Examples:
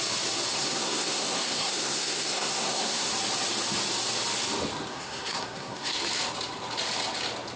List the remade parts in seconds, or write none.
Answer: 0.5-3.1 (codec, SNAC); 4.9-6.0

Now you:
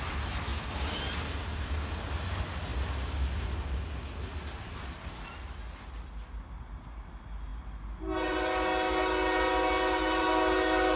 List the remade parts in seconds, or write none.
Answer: none

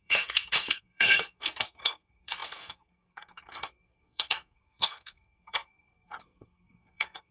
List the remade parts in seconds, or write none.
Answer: 0.0-7.3 (codec, SNAC)

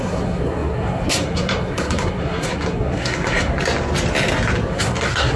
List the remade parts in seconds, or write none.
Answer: 0.0-3.5 (codec, SNAC); 4.7-5.4

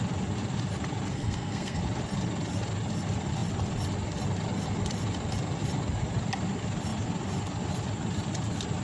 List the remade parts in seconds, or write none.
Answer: 1.1-1.8 (codec, SNAC)

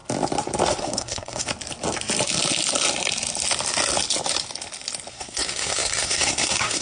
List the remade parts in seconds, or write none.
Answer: 0.7-1.5 (codec, SNAC); 5.1-6.8

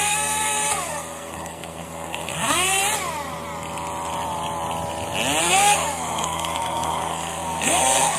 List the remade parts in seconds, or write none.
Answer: 0.0-2.8 (codec, SNAC); 5.4-8.2

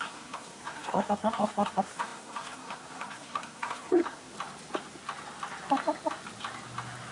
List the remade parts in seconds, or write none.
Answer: 0.0-4.3 (codec, SNAC)